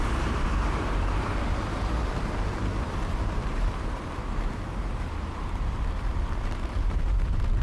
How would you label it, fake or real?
fake